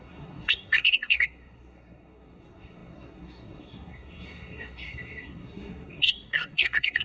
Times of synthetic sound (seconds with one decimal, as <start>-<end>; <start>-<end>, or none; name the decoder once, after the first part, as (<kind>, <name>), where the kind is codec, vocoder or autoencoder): 0.0-7.0 (codec, SNAC)